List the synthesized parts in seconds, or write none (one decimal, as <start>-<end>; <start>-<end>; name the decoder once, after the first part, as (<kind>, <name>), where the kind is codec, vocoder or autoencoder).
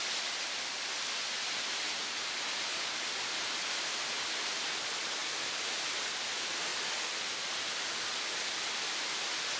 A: 5.2-6.3 (vocoder, BigVGAN v2); 6.7-7.5